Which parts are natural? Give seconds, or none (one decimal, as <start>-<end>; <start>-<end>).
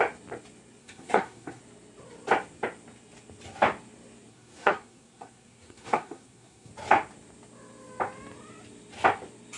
0.0-0.8; 1.6-4.3; 6.7-9.6